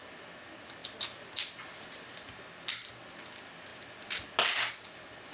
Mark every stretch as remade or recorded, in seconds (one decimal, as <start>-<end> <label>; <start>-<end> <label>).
0.0-5.3 recorded